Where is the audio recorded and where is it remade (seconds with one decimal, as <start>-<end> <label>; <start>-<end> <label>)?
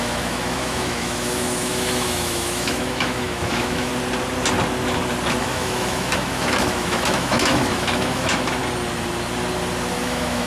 0.0-3.9 remade; 3.9-5.4 recorded; 5.4-8.6 remade; 8.6-10.0 recorded; 10.0-10.5 remade